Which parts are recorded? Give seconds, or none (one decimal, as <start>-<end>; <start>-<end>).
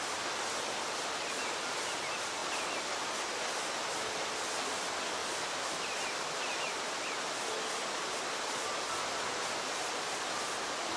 0.0-11.0